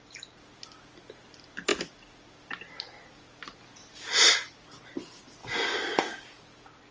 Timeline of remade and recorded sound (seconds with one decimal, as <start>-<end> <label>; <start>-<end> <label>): 0.0-5.4 recorded; 5.4-6.4 remade; 6.4-6.9 recorded